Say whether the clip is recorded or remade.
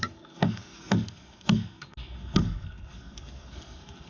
remade